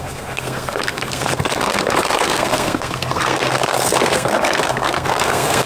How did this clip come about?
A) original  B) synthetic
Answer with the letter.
B